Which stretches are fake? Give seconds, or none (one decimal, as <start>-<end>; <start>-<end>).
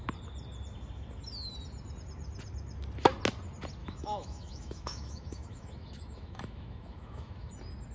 3.8-7.5